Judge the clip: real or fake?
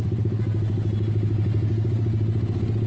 real